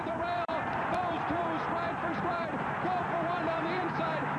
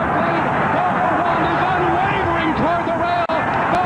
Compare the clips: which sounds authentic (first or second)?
second